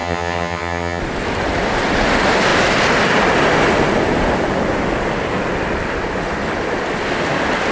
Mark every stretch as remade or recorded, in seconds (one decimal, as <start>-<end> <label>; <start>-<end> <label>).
0.0-1.0 remade; 1.0-7.7 recorded